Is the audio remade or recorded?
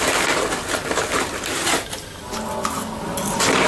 recorded